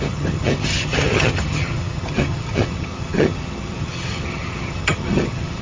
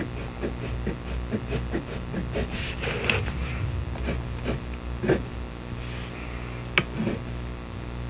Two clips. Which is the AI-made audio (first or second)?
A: first